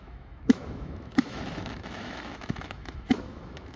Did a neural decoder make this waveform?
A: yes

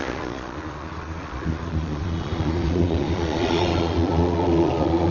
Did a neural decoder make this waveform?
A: yes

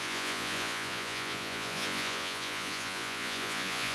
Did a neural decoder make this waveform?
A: yes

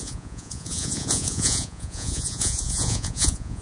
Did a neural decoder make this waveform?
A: yes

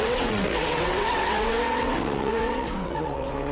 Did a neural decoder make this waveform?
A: yes